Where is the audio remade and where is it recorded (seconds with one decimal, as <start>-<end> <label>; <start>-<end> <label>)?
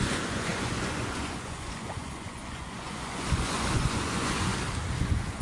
0.0-4.5 remade; 4.5-5.0 recorded; 5.0-5.4 remade